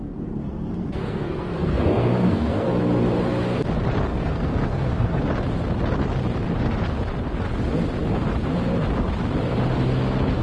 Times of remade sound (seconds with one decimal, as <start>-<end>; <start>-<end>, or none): 0.0-2.7; 4.1-5.2